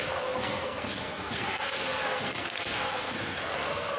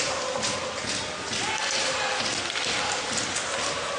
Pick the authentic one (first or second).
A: second